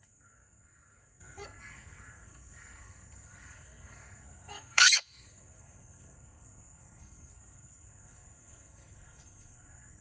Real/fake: fake